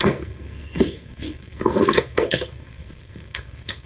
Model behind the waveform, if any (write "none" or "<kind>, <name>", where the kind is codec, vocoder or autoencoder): codec, SNAC